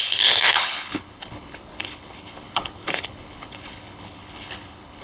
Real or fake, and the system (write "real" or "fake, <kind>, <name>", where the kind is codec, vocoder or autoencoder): fake, codec, HILCodec